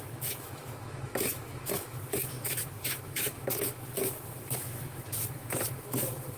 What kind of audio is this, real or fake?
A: fake